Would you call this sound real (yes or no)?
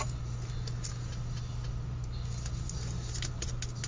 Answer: yes